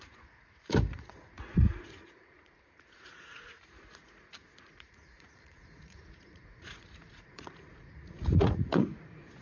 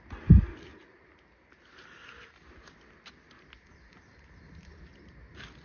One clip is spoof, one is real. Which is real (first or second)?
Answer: second